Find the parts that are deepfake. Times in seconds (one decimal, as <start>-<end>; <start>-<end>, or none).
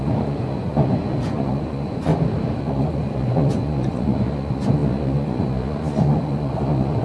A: 0.0-2.1; 2.6-7.0